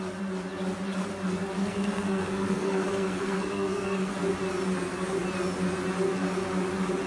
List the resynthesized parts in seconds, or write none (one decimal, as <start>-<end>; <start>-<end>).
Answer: 1.6-4.1